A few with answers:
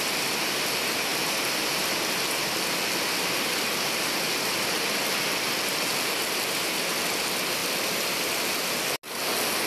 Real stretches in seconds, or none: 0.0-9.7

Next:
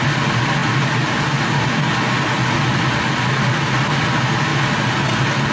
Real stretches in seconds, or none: 0.0-5.5